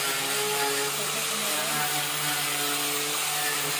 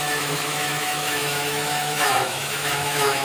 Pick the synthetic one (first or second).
second